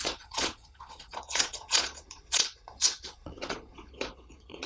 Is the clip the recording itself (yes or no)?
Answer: no